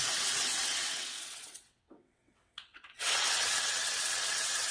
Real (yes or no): no